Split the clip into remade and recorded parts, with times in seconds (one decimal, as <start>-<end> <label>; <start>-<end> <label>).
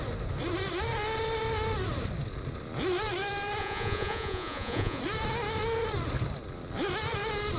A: 0.0-3.6 recorded; 3.6-5.0 remade; 5.0-7.6 recorded